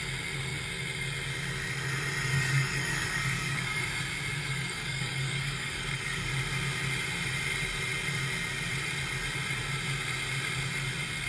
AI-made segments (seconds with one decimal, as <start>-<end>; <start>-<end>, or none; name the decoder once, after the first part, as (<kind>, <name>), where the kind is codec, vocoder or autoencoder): 2.3-3.8 (codec, DAC); 4.4-6.3